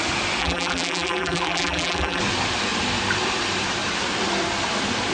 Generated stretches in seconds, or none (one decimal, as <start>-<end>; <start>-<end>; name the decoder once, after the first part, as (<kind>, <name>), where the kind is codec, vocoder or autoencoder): 0.4-2.2 (vocoder, BigVGAN v2)